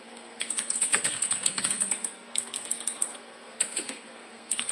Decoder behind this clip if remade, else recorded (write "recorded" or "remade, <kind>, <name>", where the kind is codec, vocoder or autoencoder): remade, codec, SNAC